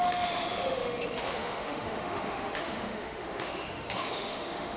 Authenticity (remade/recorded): remade